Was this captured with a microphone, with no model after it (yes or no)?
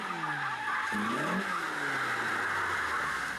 yes